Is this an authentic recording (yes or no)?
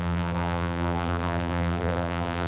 no